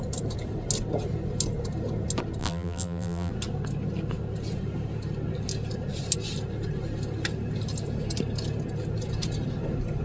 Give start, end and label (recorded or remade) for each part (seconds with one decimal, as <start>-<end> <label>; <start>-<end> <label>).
0.0-2.4 recorded; 2.4-3.3 remade; 3.3-10.0 recorded